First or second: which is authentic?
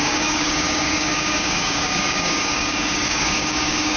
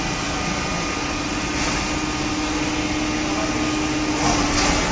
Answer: second